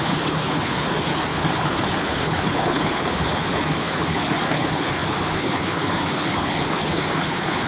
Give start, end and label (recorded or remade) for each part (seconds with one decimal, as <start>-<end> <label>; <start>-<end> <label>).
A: 0.0-7.7 remade